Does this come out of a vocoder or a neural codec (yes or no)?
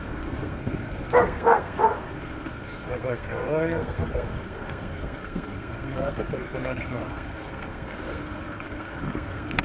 yes